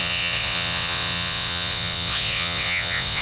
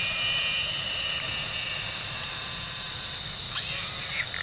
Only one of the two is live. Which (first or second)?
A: second